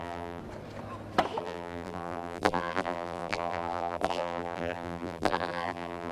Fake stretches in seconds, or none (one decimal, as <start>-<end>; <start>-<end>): 0.0-0.4; 1.4-6.1